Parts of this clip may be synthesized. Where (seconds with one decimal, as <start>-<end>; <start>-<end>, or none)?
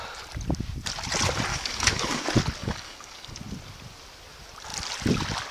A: 1.5-2.2; 2.6-3.4